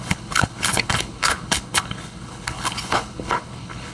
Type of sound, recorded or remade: remade